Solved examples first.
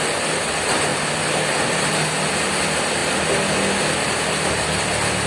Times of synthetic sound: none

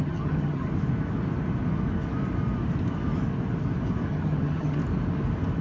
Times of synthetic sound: 0.0-0.7 (vocoder, HiFi-GAN); 4.1-4.8

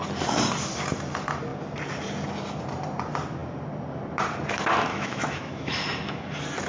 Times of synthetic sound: 4.9-6.3 (autoencoder, DAC-VAE)

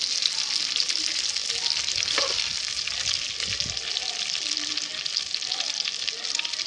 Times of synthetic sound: none